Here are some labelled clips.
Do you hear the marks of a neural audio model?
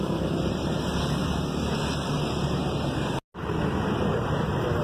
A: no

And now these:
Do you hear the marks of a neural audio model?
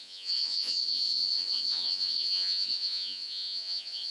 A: yes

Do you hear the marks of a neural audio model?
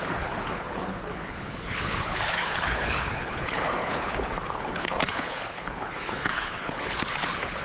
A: yes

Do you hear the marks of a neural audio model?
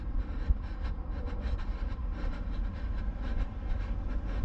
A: no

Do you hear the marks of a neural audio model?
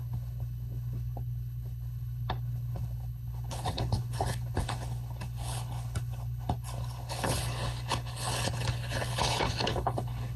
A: yes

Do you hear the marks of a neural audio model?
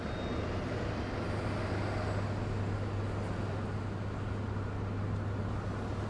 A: no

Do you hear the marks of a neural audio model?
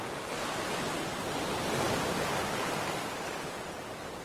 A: no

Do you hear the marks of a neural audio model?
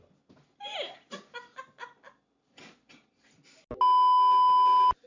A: no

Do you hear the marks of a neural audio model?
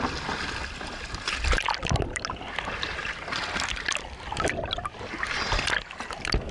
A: no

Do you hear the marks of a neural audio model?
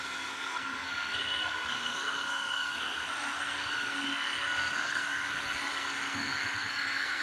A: yes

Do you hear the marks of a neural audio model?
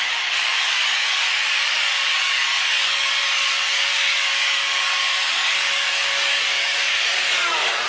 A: yes